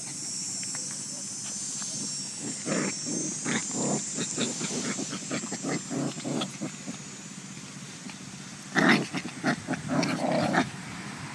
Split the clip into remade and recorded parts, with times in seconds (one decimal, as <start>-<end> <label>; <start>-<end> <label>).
0.0-11.3 recorded